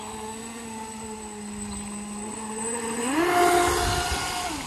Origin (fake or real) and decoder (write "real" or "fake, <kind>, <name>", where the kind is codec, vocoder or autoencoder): real